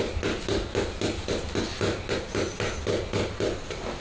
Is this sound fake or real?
real